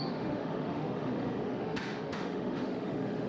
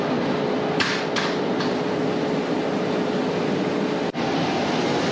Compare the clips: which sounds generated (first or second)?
first